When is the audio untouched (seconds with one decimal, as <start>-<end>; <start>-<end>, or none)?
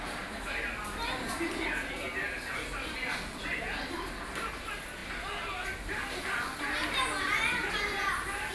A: 0.0-8.5